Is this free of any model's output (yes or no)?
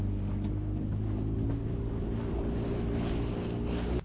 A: yes